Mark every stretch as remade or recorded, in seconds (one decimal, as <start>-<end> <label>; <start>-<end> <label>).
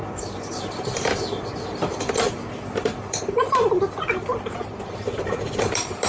0.0-3.2 remade; 3.2-6.1 recorded